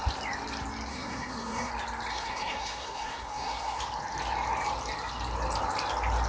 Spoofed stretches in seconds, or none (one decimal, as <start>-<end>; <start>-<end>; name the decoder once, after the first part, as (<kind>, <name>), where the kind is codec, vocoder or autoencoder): 0.9-1.7 (codec, SNAC); 2.1-3.8